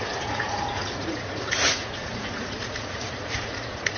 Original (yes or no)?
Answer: no